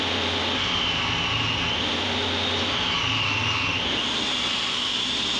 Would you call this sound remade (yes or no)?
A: no